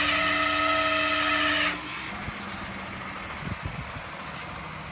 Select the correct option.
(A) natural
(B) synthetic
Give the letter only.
A